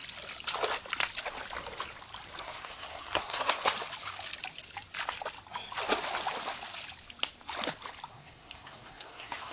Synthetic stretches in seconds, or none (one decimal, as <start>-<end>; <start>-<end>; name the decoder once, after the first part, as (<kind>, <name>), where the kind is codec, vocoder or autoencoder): 2.4-3.6 (codec, SNAC); 8.1-9.5